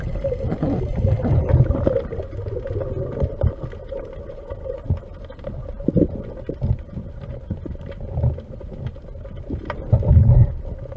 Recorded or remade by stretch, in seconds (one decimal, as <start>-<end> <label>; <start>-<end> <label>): 0.0-0.9 recorded; 0.9-1.8 remade; 1.8-7.3 recorded; 7.3-9.3 remade; 9.3-11.0 recorded